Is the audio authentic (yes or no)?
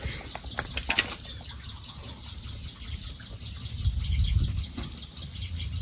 yes